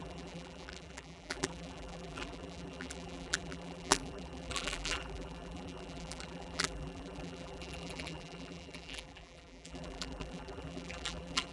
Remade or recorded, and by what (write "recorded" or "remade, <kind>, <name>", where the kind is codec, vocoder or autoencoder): remade, vocoder, BigVGAN v2